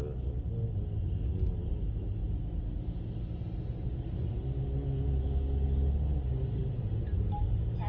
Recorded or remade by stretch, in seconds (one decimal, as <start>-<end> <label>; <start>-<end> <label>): 0.0-6.6 recorded; 6.6-7.9 remade